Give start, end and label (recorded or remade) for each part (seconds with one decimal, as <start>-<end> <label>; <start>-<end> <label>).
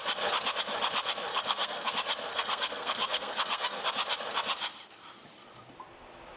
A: 0.0-1.3 recorded; 1.3-1.9 remade; 1.9-2.3 recorded; 2.3-3.8 remade; 3.8-6.4 recorded